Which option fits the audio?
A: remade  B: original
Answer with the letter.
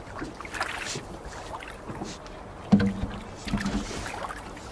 B